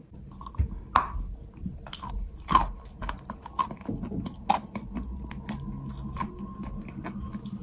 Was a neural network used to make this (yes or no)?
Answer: no